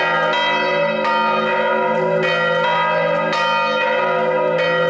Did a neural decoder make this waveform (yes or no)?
no